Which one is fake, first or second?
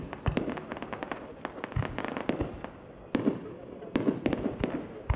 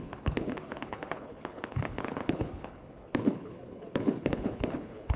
second